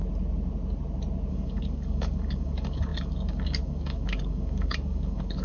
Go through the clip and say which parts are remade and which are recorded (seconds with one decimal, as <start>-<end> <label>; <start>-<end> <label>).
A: 0.0-1.3 recorded; 1.3-5.4 remade